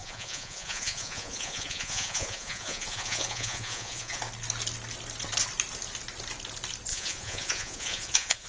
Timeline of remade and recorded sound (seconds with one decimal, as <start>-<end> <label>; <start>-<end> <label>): 0.0-4.2 remade; 4.2-6.9 recorded; 6.9-8.5 remade